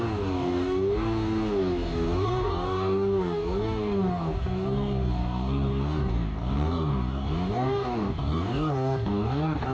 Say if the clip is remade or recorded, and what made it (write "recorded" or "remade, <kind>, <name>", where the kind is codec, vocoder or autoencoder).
remade, codec, DAC